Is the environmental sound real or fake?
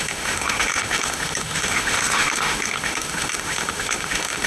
fake